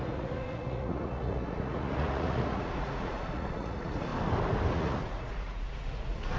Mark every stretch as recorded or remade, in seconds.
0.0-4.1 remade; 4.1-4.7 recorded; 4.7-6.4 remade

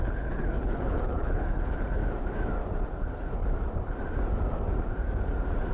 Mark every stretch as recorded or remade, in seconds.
0.0-2.0 remade; 2.0-5.7 recorded

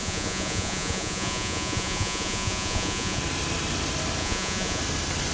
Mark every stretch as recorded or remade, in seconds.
0.0-3.2 remade; 3.2-4.2 recorded; 4.2-4.8 remade; 4.8-5.3 recorded

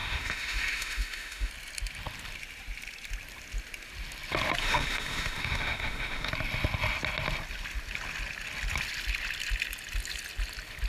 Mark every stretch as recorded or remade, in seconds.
0.0-1.5 remade; 1.5-4.6 recorded; 4.6-6.3 remade; 6.3-10.9 recorded